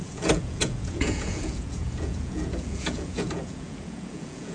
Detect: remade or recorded remade